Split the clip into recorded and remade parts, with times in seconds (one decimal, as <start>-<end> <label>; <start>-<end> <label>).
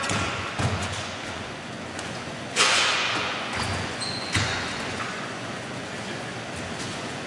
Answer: 0.0-6.3 remade; 6.3-6.8 recorded; 6.8-7.3 remade